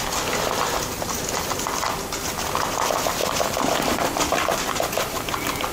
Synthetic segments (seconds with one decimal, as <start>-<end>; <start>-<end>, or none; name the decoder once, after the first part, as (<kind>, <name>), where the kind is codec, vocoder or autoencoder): none